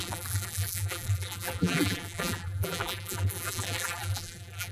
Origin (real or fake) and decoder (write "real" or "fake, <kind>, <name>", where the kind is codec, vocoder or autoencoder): fake, vocoder, BigVGAN v2